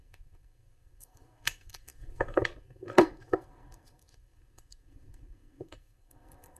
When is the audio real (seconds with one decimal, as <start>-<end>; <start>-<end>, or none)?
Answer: none